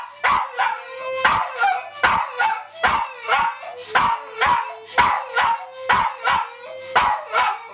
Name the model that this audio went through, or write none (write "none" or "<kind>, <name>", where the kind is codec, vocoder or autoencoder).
none